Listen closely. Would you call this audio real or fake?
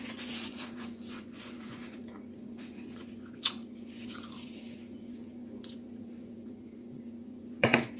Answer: fake